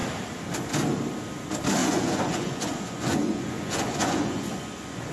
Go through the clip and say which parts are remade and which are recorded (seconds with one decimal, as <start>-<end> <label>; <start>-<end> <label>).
0.0-1.8 recorded; 1.8-5.1 remade